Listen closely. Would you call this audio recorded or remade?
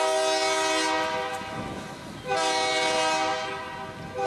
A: recorded